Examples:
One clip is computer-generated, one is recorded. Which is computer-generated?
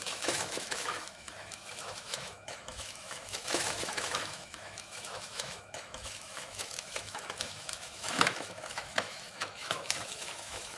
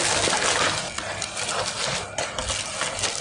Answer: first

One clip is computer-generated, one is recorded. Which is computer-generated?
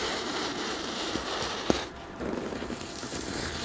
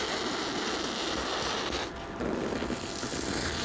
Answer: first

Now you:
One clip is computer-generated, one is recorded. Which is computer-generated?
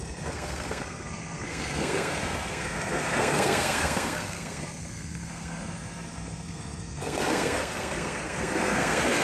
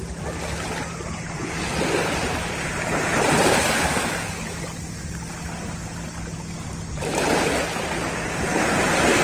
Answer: first